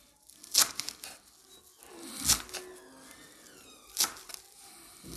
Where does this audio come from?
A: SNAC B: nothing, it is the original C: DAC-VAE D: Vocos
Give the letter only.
B